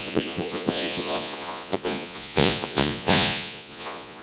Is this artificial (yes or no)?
yes